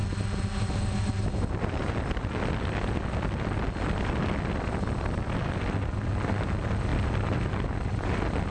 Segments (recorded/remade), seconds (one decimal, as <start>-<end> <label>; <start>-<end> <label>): 0.0-8.5 recorded

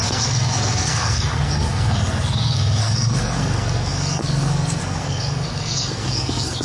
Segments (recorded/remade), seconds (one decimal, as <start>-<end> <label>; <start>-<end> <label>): 0.0-6.6 remade

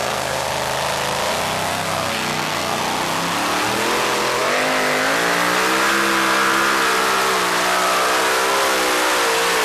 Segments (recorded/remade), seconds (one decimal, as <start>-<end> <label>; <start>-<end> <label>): 0.0-0.5 remade; 0.5-1.7 recorded; 1.7-2.8 remade; 2.8-9.6 recorded

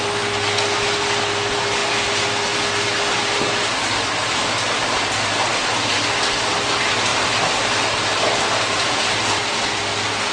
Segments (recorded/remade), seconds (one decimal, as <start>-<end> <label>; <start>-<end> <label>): 0.0-4.2 recorded; 4.2-5.1 remade; 5.1-7.1 recorded; 7.1-9.0 remade; 9.0-10.3 recorded

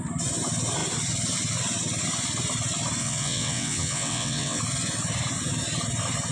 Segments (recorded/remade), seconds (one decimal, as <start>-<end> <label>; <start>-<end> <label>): 0.0-3.0 recorded; 3.0-4.6 remade; 4.6-6.3 recorded